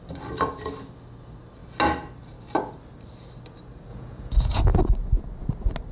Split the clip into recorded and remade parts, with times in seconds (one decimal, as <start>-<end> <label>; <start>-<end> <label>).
0.0-3.9 recorded; 3.9-4.8 remade; 4.8-5.9 recorded